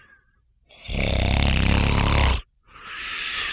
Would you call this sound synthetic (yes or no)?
no